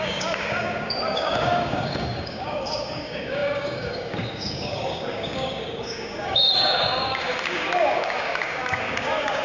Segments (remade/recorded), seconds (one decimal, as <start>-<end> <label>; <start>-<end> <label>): 0.0-9.4 remade